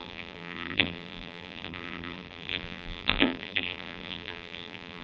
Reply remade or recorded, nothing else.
remade